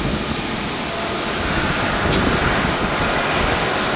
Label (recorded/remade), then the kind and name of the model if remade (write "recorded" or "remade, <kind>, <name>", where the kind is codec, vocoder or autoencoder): recorded